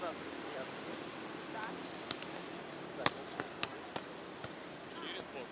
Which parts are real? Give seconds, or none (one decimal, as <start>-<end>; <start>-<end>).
0.0-5.5